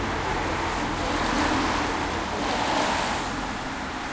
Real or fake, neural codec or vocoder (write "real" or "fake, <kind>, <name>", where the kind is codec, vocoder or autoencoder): real